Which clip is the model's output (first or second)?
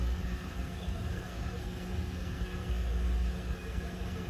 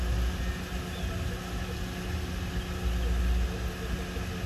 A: first